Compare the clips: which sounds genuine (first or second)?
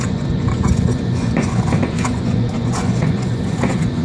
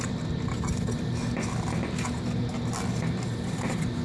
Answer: second